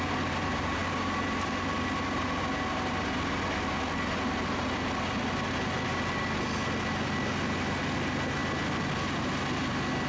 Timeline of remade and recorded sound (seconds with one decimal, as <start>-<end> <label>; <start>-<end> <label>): 0.0-10.1 recorded